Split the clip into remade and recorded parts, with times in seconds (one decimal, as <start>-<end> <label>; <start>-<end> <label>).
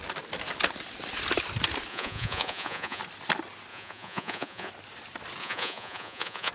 0.0-1.9 recorded; 1.9-3.0 remade; 3.0-3.7 recorded; 3.7-4.7 remade; 4.7-5.4 recorded; 5.4-6.5 remade